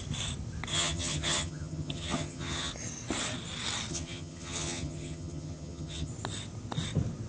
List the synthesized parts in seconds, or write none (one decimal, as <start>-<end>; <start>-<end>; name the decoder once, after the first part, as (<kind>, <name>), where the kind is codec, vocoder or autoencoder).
0.7-2.7 (vocoder, HiFi-GAN); 3.9-6.1